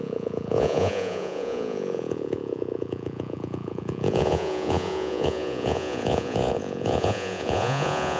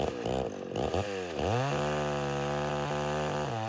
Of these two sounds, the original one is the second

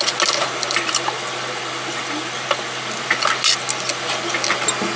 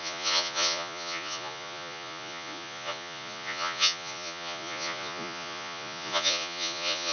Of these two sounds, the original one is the first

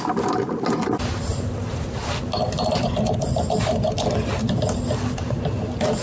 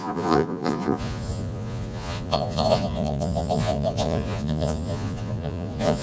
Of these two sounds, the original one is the first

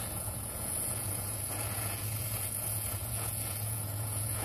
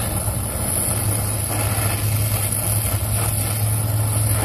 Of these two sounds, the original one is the second